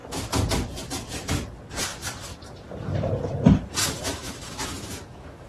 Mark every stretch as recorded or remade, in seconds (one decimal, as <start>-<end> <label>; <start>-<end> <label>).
0.0-3.8 recorded; 3.8-5.5 remade